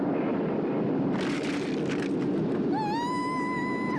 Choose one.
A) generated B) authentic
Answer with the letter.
B